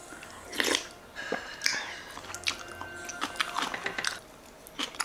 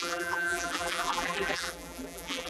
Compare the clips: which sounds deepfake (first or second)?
second